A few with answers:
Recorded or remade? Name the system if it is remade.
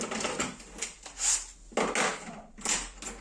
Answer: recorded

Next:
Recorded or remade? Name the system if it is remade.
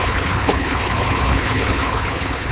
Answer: remade, codec, HILCodec